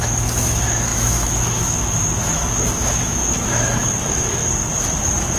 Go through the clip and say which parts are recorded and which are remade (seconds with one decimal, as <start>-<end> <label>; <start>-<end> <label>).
0.0-4.4 remade; 4.4-5.0 recorded; 5.0-5.4 remade